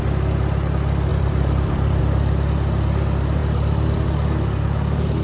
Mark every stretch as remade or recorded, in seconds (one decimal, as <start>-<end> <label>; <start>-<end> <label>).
0.0-1.1 recorded; 1.1-2.0 remade; 2.0-3.4 recorded; 3.4-4.1 remade; 4.1-5.2 recorded